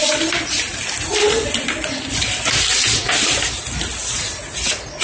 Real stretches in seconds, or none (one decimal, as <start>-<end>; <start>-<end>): 0.0-5.0